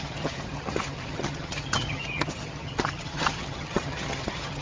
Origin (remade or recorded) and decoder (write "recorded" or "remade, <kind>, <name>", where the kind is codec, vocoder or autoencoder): remade, vocoder, HiFi-GAN